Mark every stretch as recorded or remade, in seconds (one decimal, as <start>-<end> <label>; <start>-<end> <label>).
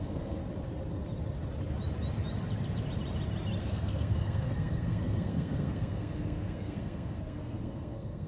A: 0.0-0.4 remade; 0.4-3.6 recorded; 3.6-8.3 remade